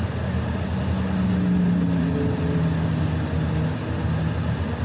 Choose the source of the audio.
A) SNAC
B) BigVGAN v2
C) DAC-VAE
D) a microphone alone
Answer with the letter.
D